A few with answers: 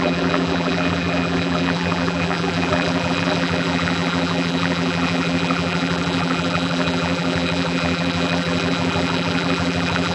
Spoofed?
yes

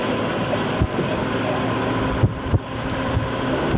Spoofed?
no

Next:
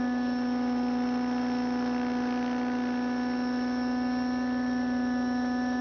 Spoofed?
no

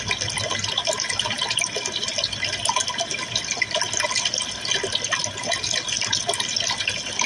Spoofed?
no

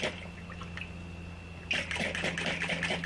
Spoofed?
no